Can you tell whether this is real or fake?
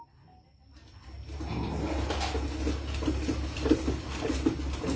real